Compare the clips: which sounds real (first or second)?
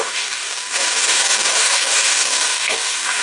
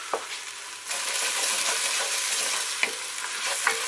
second